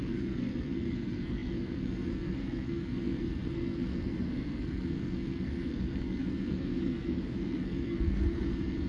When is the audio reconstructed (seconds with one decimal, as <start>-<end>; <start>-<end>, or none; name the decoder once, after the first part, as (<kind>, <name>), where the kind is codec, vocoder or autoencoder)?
0.0-8.9 (codec, SNAC)